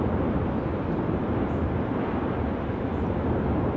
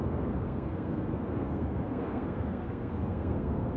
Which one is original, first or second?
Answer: first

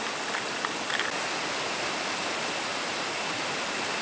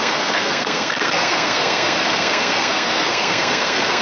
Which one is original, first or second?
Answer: first